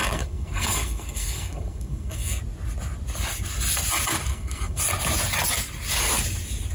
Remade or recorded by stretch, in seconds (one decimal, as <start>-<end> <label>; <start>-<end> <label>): 0.0-2.4 remade; 2.4-4.3 recorded; 4.3-4.8 remade; 4.8-6.7 recorded